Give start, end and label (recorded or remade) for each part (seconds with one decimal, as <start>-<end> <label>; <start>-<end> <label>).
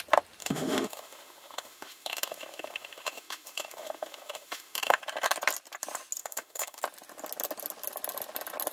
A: 0.0-0.4 recorded; 0.4-5.0 remade; 5.0-6.2 recorded; 6.2-6.8 remade; 6.8-8.7 recorded